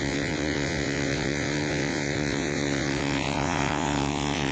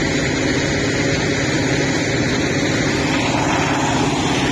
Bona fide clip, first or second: second